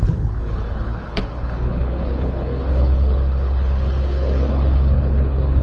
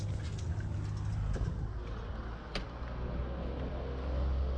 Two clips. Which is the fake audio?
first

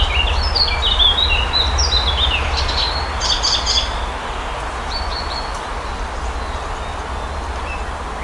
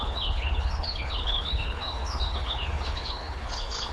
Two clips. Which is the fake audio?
second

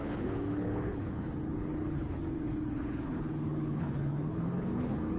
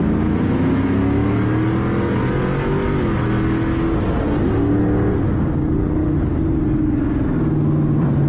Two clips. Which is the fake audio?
first